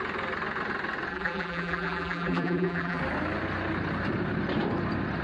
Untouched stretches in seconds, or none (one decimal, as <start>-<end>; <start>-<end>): 0.0-1.1; 3.0-5.2